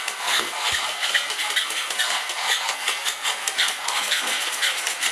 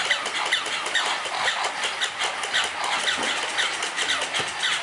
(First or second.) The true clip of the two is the second